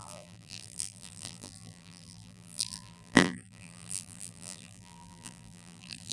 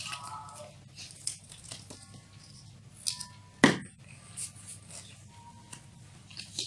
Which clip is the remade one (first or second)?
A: first